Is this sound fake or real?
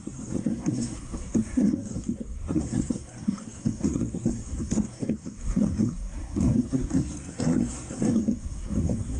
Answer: fake